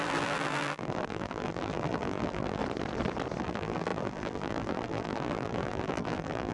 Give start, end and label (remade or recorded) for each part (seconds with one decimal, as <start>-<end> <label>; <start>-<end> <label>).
0.0-2.6 remade; 2.6-3.4 recorded; 3.4-6.5 remade